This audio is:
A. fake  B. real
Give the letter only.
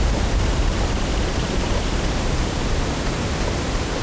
B